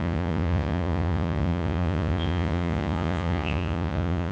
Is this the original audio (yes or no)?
no